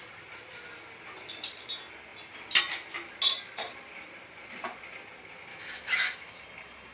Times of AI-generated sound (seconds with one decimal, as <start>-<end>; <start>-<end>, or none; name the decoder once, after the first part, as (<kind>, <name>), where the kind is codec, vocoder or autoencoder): 5.5-6.3 (autoencoder, DAC-VAE)